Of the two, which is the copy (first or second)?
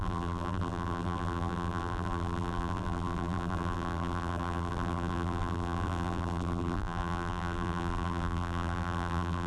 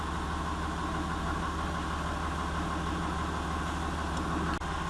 first